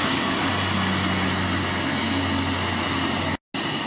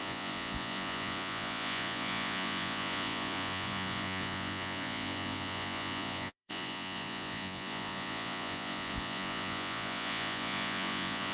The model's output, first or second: second